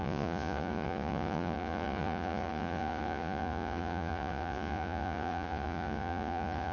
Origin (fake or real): fake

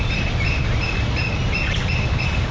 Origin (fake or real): real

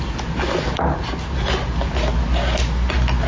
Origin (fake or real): real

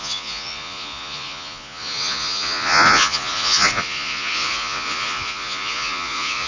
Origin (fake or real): fake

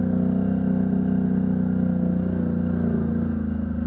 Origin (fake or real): real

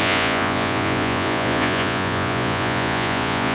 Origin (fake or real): fake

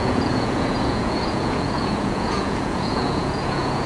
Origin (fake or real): fake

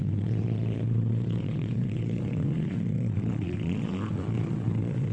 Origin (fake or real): fake